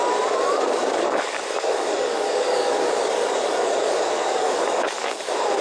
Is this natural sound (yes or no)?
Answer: no